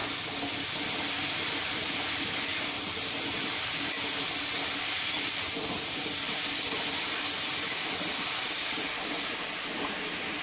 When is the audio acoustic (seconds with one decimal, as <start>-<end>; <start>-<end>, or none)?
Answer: 0.0-10.4